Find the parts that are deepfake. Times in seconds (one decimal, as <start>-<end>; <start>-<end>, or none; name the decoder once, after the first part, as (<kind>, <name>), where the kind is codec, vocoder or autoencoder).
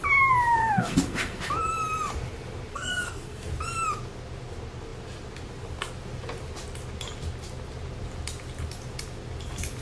0.6-1.4 (codec, SNAC); 2.7-3.5